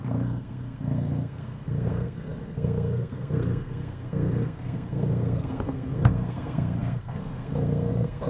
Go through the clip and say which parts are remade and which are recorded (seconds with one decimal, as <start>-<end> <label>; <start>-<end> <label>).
0.0-8.3 remade